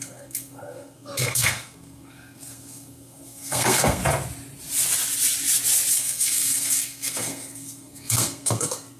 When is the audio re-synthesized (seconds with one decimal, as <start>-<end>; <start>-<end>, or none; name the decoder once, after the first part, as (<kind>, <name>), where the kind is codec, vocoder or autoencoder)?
0.0-4.0 (codec, SNAC); 5.9-9.0